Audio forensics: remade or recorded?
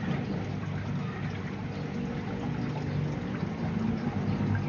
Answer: recorded